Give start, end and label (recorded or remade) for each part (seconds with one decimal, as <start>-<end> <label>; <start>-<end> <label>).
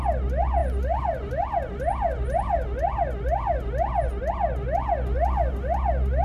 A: 0.0-6.2 recorded